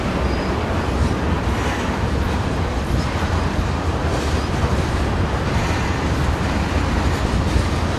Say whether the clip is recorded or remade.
recorded